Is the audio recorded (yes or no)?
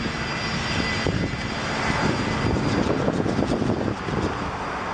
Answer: yes